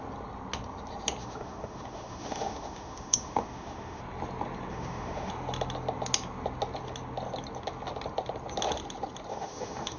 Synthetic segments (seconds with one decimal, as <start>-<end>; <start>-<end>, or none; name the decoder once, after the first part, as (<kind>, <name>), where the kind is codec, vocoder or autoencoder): 1.2-4.0 (autoencoder, DAC-VAE); 4.7-5.3; 9.3-10.0